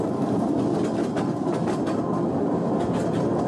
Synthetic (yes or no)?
no